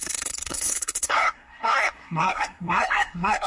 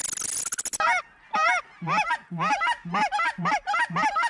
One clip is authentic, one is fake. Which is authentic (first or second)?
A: second